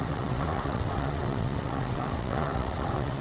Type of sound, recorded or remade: remade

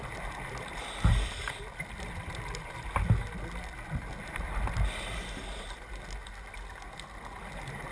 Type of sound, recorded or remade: recorded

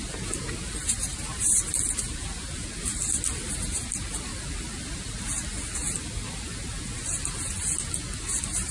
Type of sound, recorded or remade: recorded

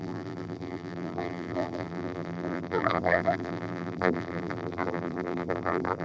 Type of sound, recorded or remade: remade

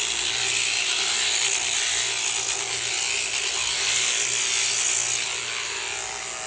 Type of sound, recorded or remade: recorded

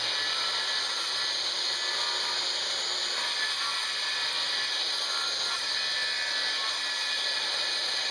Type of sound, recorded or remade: recorded